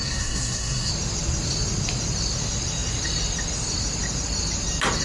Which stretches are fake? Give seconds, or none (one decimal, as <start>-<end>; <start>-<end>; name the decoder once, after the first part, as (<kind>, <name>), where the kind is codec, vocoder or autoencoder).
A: 0.0-0.9 (codec, SNAC)

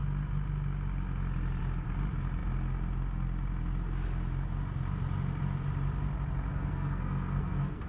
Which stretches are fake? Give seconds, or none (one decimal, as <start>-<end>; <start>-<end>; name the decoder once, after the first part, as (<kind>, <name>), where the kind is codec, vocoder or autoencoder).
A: 6.5-7.9 (codec, SNAC)

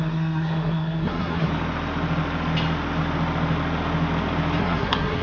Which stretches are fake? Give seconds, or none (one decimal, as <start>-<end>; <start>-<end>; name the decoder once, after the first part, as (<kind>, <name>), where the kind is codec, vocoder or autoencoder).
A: 0.0-1.5 (codec, SNAC); 4.6-5.2

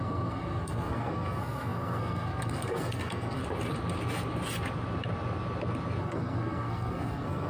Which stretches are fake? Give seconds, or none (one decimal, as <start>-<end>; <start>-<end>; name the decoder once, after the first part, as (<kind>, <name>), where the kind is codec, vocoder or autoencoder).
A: 0.0-3.4 (codec, SNAC); 6.0-7.5

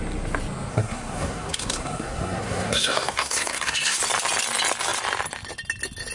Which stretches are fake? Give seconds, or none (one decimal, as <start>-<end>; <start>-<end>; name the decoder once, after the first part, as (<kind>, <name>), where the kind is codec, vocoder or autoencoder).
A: 0.7-4.0 (codec, SNAC)

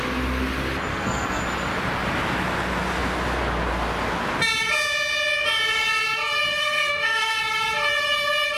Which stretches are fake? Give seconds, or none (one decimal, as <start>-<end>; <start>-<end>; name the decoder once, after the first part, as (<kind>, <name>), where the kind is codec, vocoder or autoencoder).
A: 0.9-1.4 (codec, SNAC); 6.6-7.4

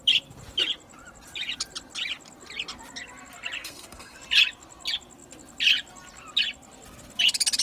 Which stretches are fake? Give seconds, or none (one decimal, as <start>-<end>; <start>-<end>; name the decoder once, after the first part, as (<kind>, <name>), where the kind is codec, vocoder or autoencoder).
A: 3.6-4.2 (codec, SNAC)